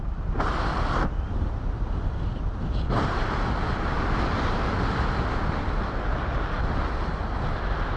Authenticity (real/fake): real